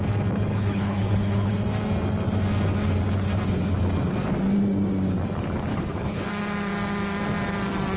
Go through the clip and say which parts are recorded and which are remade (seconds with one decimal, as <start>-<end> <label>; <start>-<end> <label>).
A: 0.0-0.5 recorded; 0.5-1.5 remade; 1.5-5.7 recorded; 5.7-6.3 remade; 6.3-8.0 recorded